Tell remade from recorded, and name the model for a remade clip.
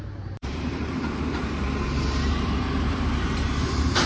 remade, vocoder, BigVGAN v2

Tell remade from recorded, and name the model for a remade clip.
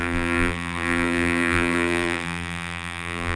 remade, vocoder, BigVGAN v2